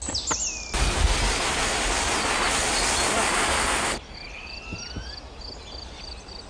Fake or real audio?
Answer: real